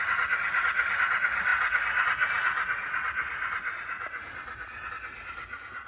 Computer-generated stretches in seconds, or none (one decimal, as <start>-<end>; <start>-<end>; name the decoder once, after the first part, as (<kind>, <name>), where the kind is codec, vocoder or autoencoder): none